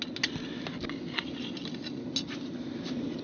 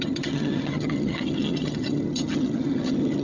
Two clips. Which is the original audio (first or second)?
first